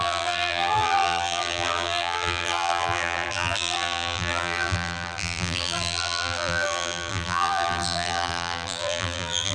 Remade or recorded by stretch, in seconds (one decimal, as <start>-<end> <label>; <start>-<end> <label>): 0.0-9.5 remade